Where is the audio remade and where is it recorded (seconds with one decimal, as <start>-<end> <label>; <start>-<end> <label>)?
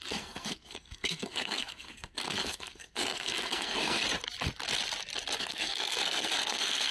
0.0-4.0 remade; 4.0-5.4 recorded; 5.4-6.9 remade